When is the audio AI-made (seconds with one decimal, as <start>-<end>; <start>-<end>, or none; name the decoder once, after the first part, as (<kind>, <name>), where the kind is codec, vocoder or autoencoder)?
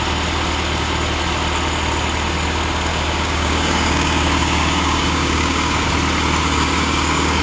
2.9-5.9 (codec, DAC); 6.4-7.4